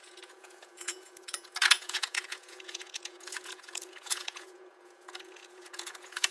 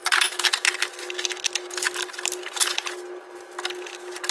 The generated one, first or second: first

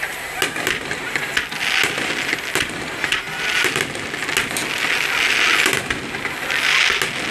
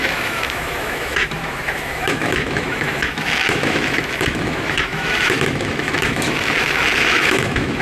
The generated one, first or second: second